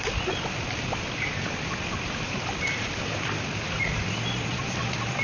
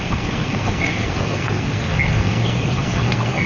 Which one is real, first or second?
first